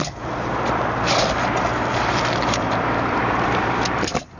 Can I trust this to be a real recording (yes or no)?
no